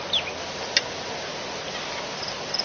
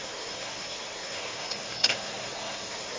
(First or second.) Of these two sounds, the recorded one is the first